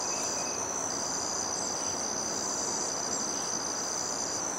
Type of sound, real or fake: real